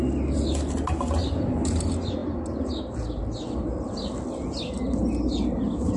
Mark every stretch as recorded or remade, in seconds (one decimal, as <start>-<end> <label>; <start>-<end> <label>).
0.0-6.0 recorded